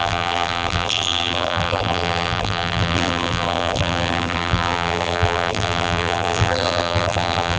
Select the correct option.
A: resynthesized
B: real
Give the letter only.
A